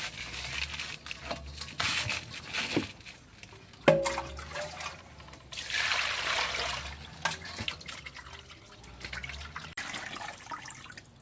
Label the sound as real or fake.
real